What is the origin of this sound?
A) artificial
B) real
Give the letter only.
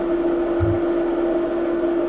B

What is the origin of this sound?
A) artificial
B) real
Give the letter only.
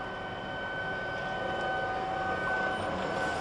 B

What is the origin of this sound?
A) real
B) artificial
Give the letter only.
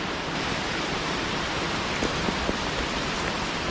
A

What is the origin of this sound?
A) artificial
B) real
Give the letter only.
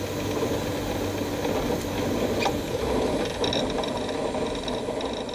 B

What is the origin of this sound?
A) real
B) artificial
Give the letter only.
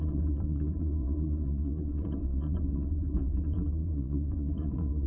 B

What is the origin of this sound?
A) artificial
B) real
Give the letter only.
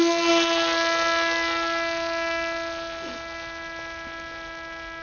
B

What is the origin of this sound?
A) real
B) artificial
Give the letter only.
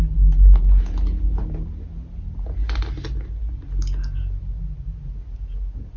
A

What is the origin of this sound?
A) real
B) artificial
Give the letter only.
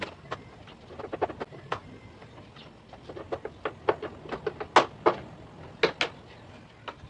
A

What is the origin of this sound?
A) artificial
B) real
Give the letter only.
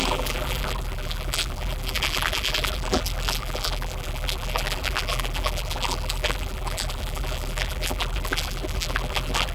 A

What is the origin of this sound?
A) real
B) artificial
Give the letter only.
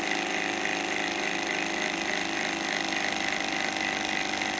A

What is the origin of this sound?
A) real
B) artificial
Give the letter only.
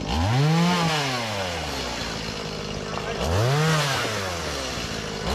A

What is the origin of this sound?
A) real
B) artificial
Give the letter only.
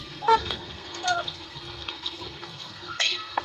B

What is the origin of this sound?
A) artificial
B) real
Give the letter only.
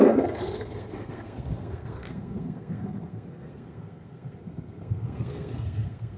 A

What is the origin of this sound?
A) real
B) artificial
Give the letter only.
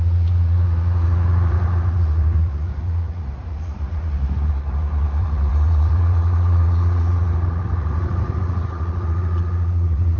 B